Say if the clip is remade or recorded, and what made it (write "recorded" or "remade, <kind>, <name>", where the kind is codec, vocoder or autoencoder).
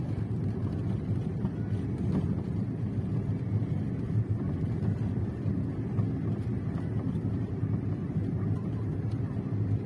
remade, vocoder, BigVGAN v2